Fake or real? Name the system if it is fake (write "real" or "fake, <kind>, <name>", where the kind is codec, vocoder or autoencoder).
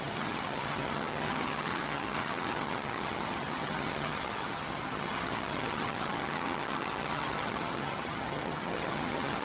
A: fake, vocoder, HiFi-GAN